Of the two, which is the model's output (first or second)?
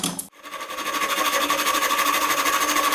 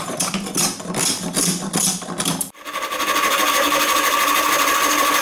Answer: second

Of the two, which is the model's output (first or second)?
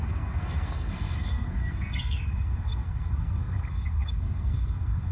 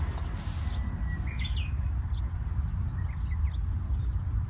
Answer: first